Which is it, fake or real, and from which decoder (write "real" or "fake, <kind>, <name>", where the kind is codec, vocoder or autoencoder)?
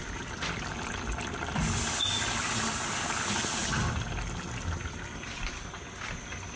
real